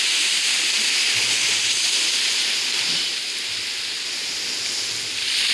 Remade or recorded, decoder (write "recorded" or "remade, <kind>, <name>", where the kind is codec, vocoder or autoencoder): recorded